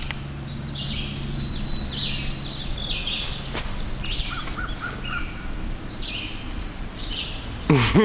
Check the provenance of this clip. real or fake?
real